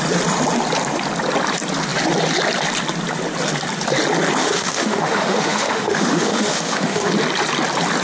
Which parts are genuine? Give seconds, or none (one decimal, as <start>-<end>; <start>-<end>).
0.0-4.4; 7.1-8.0